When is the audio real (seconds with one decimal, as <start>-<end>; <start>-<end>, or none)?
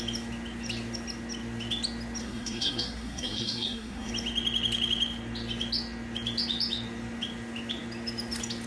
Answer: 0.0-2.2; 4.1-8.7